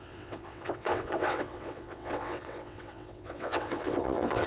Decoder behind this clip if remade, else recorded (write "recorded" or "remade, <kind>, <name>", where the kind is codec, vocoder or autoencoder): remade, vocoder, WaveNeXt